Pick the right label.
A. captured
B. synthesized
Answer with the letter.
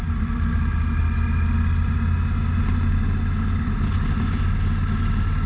A